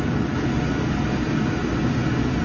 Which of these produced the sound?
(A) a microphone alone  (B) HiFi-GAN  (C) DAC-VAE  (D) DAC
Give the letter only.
A